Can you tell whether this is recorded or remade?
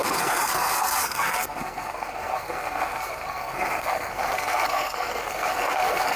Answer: remade